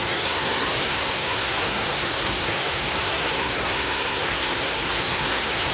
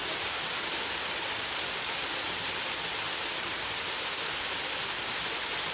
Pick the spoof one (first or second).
first